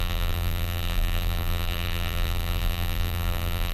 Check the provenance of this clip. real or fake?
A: fake